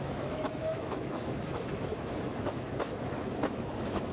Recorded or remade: remade